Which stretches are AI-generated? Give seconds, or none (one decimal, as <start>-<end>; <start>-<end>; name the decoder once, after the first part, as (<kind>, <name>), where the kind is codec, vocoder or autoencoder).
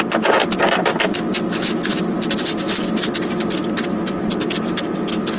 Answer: none